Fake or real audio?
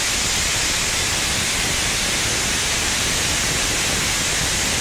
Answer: real